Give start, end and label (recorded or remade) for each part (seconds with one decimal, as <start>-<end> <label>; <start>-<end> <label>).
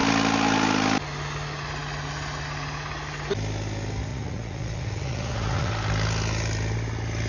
0.0-4.1 recorded; 4.1-5.7 remade; 5.7-7.3 recorded